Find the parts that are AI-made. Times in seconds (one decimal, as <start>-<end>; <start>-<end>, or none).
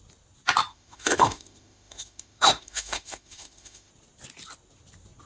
0.7-3.9